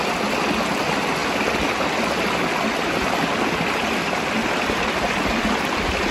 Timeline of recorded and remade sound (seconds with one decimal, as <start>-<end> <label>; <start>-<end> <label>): 0.0-6.1 recorded